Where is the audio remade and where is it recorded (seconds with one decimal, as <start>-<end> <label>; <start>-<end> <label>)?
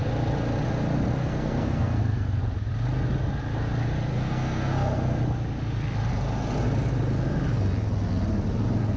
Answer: 0.0-1.2 recorded; 1.2-2.4 remade; 2.4-4.1 recorded; 4.1-5.2 remade; 5.2-9.0 recorded